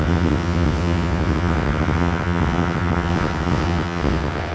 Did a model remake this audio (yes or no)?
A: yes